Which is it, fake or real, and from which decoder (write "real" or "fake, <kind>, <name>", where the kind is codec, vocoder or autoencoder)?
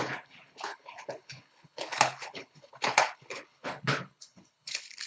fake, codec, HILCodec